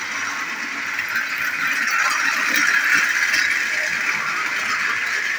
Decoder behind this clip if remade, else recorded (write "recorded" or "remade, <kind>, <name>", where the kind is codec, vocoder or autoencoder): recorded